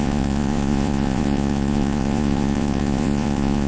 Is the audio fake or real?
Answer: fake